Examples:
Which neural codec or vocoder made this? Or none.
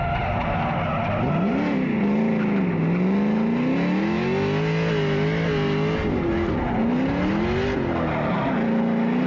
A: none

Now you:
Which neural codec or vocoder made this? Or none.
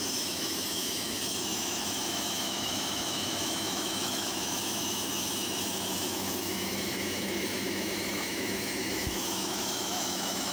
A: autoencoder, DAC-VAE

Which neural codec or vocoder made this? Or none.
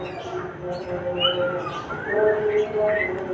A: none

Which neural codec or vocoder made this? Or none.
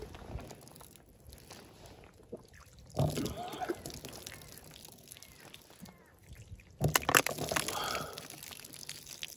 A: none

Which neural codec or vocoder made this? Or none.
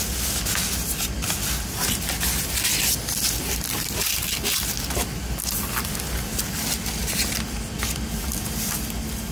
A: none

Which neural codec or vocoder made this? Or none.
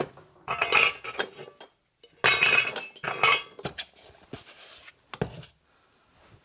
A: none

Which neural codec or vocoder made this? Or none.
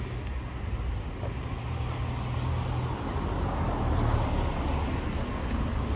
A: none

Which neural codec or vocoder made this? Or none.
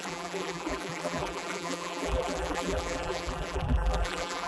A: vocoder, BigVGAN v2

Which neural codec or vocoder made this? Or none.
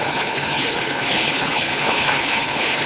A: codec, HILCodec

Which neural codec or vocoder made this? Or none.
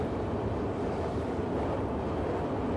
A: none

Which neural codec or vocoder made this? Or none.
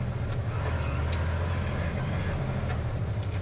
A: none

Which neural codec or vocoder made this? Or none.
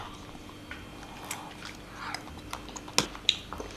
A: none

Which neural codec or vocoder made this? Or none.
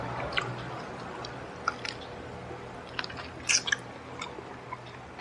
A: none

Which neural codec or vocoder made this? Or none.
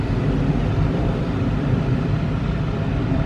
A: vocoder, BigVGAN v2